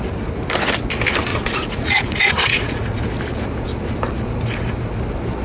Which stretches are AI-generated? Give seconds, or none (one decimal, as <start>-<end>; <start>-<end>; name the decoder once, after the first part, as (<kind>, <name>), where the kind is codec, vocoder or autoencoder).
1.3-3.0 (vocoder, Vocos)

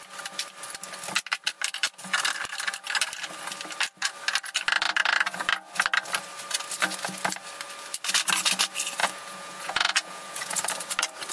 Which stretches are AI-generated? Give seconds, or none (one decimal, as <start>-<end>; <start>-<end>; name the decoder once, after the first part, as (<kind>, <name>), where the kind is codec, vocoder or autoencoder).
9.0-10.5 (vocoder, Vocos)

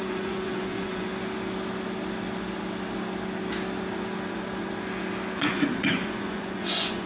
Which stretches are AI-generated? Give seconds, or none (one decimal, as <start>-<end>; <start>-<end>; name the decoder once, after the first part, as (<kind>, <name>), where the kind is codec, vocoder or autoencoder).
0.0-1.1 (vocoder, Vocos); 5.4-7.1

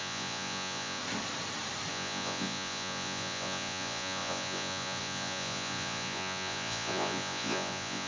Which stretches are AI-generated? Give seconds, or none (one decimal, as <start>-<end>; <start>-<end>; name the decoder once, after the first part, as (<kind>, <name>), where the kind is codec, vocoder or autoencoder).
0.0-1.0 (vocoder, Vocos); 1.9-8.1

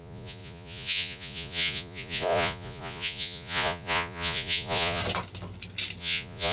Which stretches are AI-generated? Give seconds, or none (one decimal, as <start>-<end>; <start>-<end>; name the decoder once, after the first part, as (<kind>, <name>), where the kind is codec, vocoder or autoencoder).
0.0-5.0 (vocoder, Vocos); 6.0-6.5

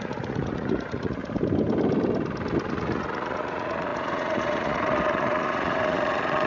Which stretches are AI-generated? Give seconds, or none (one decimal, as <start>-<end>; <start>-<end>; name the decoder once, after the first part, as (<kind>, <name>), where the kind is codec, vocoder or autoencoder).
0.0-1.2 (vocoder, Vocos); 2.7-6.5

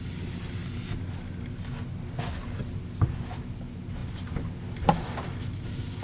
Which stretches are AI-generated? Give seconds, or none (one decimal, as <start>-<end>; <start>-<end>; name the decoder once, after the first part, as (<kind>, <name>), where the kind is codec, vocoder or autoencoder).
none